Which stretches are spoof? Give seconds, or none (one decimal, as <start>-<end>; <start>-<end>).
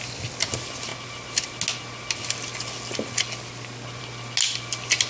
none